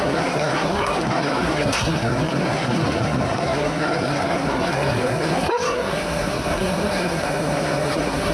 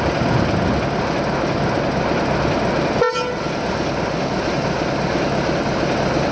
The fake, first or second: first